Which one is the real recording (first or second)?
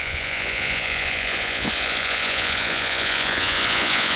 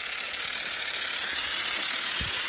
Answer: second